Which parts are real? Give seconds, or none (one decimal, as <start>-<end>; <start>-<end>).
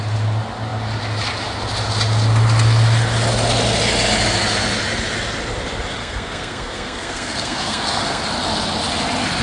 0.0-6.0; 8.2-9.4